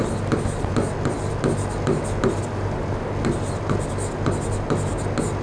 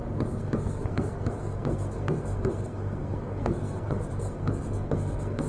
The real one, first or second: first